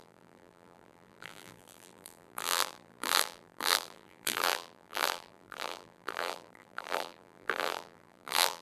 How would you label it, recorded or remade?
remade